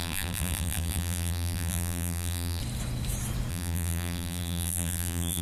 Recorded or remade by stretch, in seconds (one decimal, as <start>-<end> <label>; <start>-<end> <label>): 0.0-2.6 remade; 2.6-3.5 recorded; 3.5-5.4 remade